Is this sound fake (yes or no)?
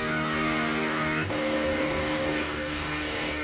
yes